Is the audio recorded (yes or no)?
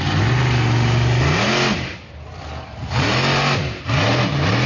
yes